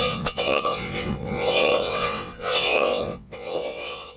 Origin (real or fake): fake